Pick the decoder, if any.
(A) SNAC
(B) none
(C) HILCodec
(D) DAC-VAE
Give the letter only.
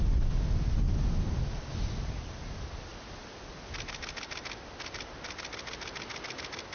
B